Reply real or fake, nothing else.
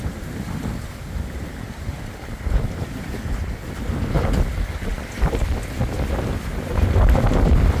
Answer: real